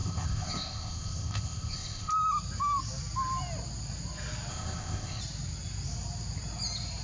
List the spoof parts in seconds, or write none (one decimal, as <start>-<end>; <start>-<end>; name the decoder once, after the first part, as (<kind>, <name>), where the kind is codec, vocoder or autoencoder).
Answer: 0.0-2.1 (codec, ZipCodec); 4.5-5.2